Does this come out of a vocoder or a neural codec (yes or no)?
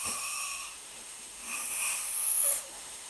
yes